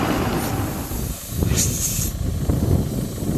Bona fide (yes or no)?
yes